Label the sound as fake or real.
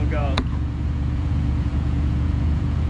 fake